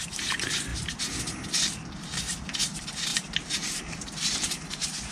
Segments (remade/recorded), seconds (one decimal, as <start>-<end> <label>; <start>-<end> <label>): 0.0-3.1 recorded; 3.1-5.1 remade

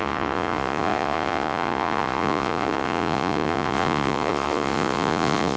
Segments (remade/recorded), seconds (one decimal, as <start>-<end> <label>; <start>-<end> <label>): 0.0-5.6 remade

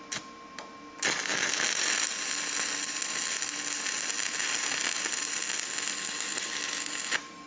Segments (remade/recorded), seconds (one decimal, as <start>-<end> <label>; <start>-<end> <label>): 0.0-7.5 recorded

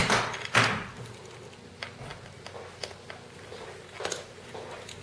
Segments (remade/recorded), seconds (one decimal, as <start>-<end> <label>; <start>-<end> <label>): 0.0-0.9 remade; 0.9-5.0 recorded